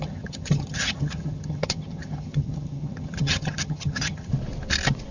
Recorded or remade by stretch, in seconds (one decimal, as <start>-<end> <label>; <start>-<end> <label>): 0.0-4.3 remade; 4.3-5.1 recorded